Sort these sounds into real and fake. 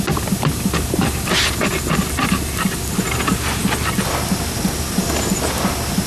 real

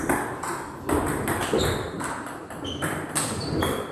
real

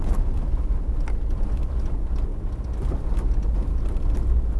real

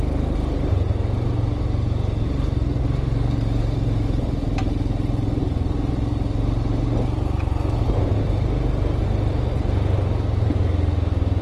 real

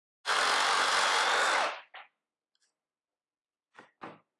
real